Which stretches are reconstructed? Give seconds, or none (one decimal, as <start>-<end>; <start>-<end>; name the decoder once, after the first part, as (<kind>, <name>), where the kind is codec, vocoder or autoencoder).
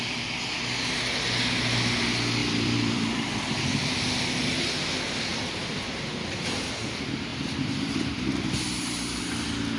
2.4-3.6 (vocoder, BigVGAN v2); 5.3-5.9; 7.3-9.2